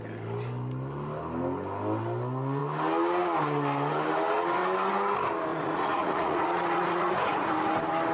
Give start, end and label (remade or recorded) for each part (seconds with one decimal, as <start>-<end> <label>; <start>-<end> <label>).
0.0-5.5 recorded; 5.5-7.5 remade; 7.5-8.1 recorded